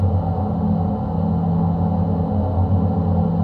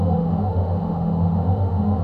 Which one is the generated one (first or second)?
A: second